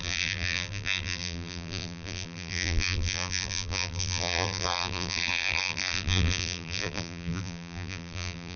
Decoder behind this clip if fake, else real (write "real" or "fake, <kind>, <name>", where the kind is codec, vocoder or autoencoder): fake, vocoder, BigVGAN v2